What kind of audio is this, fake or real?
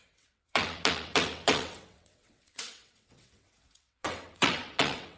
fake